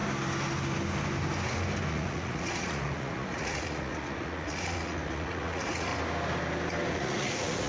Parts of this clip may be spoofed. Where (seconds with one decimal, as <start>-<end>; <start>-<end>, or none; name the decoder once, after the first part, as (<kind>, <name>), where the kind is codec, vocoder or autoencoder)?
1.9-5.9 (vocoder, Vocos); 6.9-7.7